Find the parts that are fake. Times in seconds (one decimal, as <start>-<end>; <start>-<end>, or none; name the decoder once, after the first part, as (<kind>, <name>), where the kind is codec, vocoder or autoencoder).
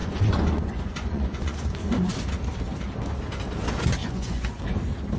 0.0-2.1 (vocoder, Vocos); 4.0-4.6